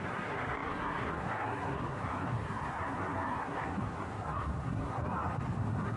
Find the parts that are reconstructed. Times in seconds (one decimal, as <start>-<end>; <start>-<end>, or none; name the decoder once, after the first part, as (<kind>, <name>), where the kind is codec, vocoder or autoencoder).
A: 0.0-6.0 (codec, SNAC)

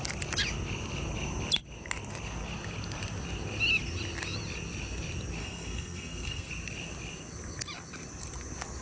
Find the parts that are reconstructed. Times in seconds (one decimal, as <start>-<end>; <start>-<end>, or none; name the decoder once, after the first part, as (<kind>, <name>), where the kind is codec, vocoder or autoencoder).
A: 5.4-6.5 (codec, SNAC)

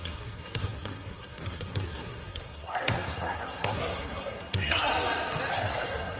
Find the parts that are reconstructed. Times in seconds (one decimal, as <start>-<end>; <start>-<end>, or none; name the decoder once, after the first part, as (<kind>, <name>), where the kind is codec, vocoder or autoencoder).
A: 0.0-4.9 (codec, SNAC); 5.5-6.2

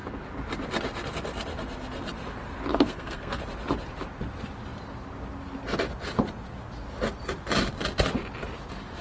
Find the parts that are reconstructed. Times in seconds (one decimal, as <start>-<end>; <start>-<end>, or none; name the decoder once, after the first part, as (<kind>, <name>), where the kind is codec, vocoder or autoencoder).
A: 2.7-3.4 (codec, SNAC)